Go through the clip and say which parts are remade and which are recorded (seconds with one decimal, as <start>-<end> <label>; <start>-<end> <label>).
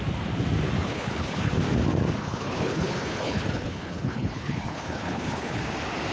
0.0-0.8 recorded; 0.8-1.5 remade; 1.5-2.2 recorded; 2.2-5.6 remade; 5.6-6.1 recorded